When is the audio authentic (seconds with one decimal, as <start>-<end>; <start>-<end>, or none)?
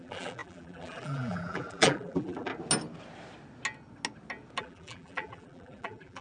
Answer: 2.5-4.6